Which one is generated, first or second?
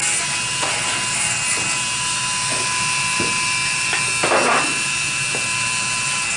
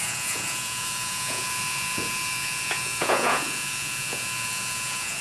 second